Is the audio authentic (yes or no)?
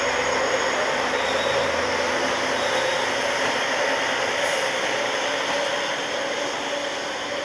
yes